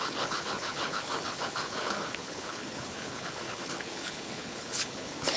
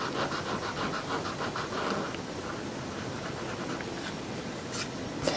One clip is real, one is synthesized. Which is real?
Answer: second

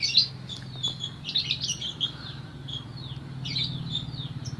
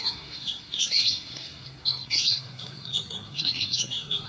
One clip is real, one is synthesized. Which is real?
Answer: first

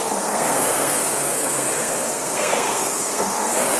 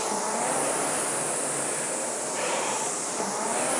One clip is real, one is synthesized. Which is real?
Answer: second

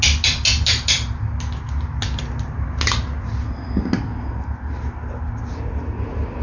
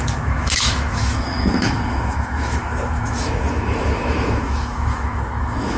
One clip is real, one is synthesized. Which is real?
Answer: first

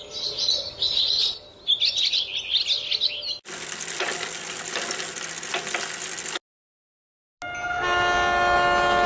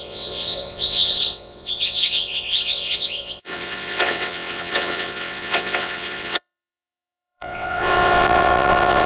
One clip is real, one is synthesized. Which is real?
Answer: first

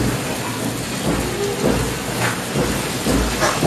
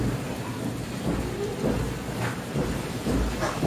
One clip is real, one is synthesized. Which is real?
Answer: first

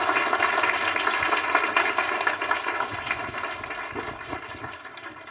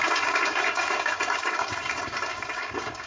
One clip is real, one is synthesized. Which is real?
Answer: first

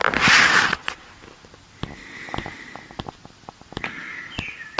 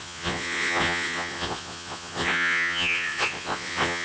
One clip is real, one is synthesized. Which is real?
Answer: first